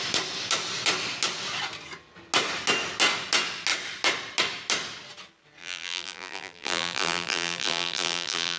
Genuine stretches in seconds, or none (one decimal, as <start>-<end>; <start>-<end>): 0.0-5.6